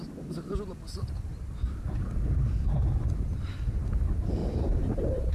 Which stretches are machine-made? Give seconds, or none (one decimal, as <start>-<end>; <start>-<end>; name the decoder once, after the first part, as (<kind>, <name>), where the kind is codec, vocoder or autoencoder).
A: 1.3-3.9 (vocoder, BigVGAN v2); 4.4-5.3